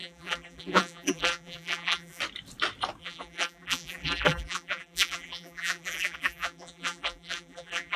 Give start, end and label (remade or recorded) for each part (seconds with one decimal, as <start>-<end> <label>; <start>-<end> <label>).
0.0-2.2 remade; 2.2-3.0 recorded; 3.0-8.0 remade